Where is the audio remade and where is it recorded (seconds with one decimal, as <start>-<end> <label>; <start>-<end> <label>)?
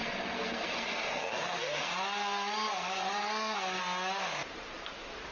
0.0-1.9 remade; 1.9-2.7 recorded; 2.7-3.8 remade; 3.8-5.3 recorded